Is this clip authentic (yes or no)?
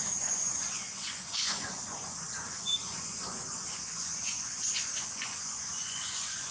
no